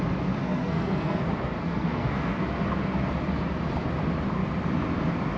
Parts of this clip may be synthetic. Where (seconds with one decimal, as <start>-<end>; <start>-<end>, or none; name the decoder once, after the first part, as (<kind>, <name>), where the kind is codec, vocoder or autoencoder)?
0.4-1.2 (codec, SNAC); 1.6-2.4